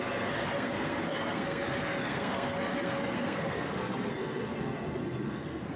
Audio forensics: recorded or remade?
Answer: remade